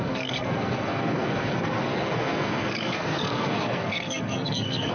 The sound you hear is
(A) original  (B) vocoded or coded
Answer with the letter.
B